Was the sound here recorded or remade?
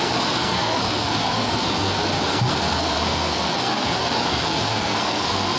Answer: remade